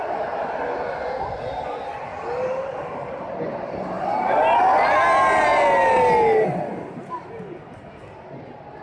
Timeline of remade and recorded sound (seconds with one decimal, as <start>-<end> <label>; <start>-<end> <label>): 0.0-8.8 recorded